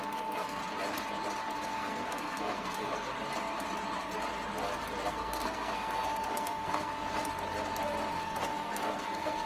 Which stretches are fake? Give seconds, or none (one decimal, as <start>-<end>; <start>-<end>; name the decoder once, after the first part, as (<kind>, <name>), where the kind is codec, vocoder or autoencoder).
0.0-0.6 (codec, SNAC); 1.5-3.1; 5.1-7.2; 8.1-9.5